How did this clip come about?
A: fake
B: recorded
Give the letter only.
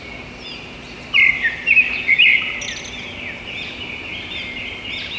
B